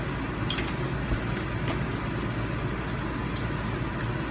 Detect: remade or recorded recorded